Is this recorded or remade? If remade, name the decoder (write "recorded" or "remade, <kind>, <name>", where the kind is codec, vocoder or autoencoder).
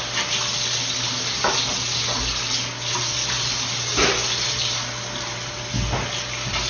recorded